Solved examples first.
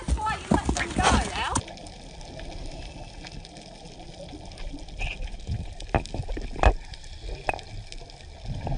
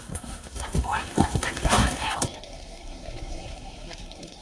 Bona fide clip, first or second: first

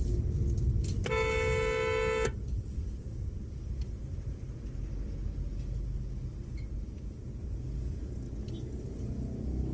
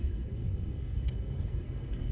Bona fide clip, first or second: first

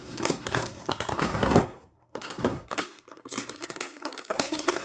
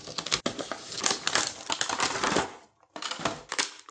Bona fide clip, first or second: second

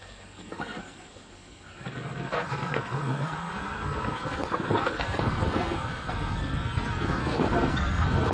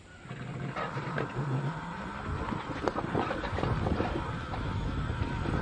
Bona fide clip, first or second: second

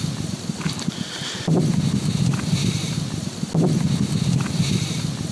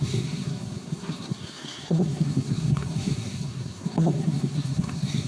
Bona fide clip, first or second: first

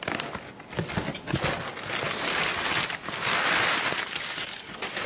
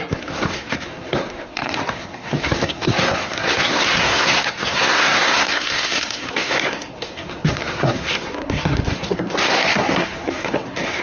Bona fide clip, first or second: first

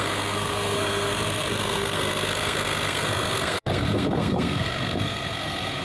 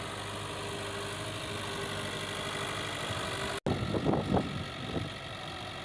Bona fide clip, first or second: second